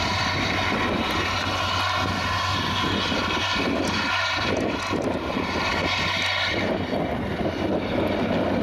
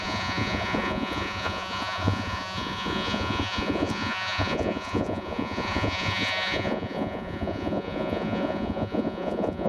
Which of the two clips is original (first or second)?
first